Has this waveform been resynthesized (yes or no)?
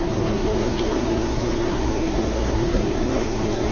yes